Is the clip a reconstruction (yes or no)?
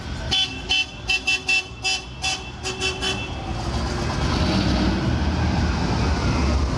no